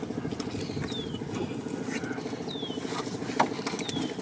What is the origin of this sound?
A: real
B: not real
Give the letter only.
A